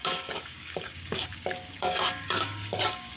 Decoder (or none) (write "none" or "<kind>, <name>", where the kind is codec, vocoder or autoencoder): codec, DAC